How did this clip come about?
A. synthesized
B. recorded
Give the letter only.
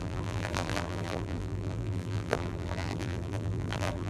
A